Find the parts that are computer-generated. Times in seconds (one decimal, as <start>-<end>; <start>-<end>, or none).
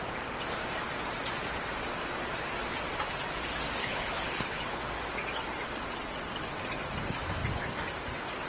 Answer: 3.8-4.9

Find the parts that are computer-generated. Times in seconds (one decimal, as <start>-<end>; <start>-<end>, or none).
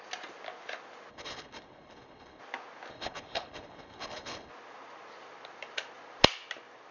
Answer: 1.1-2.4; 2.9-4.5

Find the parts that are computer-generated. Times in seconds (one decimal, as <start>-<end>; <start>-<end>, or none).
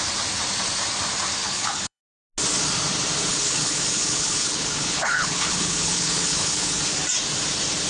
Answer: 1.4-2.0; 3.3-6.8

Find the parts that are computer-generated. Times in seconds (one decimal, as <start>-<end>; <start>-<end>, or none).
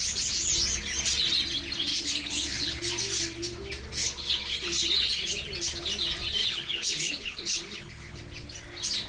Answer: 1.9-2.8; 4.0-5.1; 6.4-8.2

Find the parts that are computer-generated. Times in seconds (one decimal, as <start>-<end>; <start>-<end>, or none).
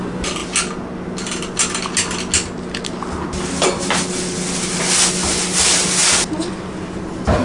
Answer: none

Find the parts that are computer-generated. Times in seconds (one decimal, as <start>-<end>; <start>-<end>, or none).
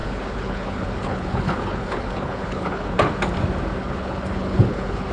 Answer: 0.0-3.1; 3.8-5.1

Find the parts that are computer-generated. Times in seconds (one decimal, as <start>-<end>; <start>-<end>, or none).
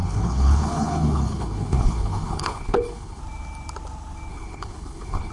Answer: 0.0-3.2; 4.3-5.3